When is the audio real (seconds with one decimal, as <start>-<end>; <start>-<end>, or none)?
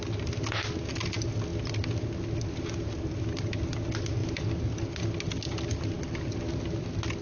0.0-7.2